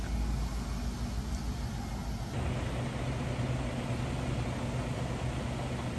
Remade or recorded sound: recorded